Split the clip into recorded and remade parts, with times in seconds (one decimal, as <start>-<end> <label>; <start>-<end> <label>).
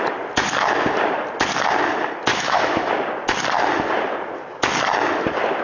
0.0-2.3 recorded; 2.3-2.9 remade; 2.9-5.6 recorded